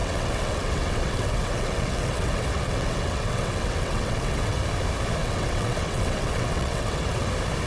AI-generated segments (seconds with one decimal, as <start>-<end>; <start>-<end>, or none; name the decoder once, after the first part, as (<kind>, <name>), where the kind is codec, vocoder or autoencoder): 0.0-4.6 (vocoder, WaveNeXt); 5.2-7.3